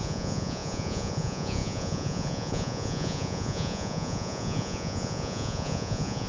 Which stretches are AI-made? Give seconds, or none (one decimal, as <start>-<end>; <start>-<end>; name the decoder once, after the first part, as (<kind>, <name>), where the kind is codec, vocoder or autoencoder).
0.0-6.3 (vocoder, Vocos)